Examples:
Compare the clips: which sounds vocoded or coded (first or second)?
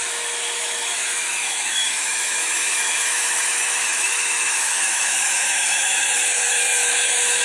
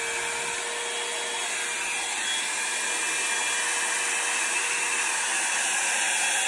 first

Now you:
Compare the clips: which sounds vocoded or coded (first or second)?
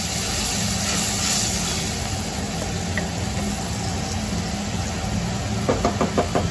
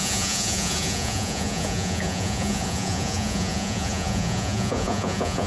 second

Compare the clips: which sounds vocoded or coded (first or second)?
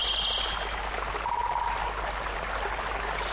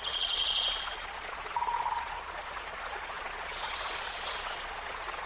second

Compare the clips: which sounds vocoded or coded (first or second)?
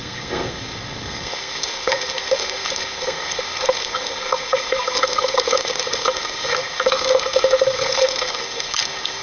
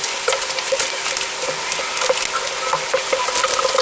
first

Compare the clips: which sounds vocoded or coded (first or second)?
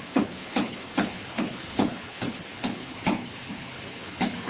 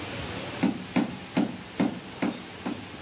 first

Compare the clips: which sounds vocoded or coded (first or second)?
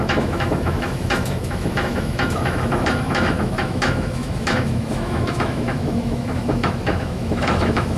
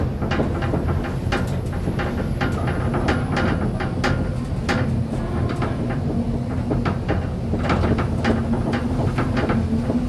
first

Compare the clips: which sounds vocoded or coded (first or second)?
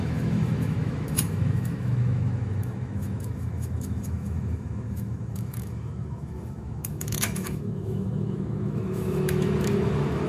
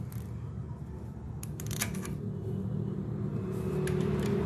first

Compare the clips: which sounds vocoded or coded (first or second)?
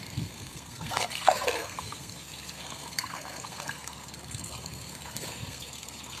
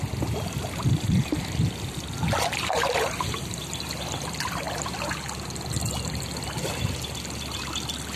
first